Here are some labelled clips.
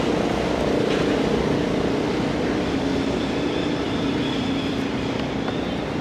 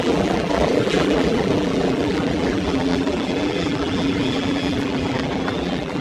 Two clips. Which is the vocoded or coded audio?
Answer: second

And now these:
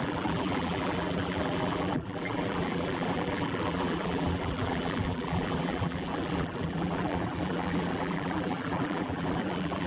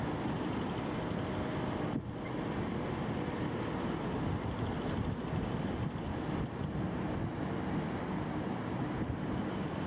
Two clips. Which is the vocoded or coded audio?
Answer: first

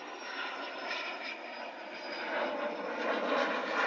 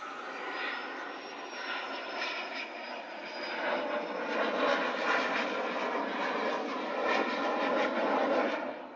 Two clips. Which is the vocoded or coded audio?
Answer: first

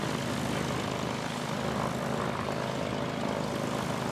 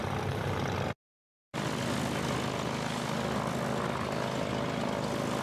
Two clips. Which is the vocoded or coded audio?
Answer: first